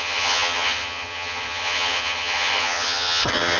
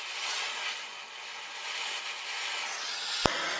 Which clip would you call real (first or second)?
second